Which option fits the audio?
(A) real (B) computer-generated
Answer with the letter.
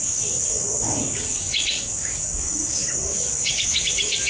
B